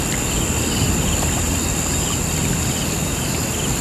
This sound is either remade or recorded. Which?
recorded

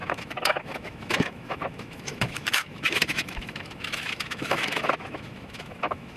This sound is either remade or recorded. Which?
remade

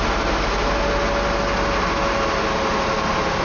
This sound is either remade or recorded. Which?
recorded